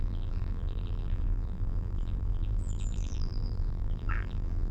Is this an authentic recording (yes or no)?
no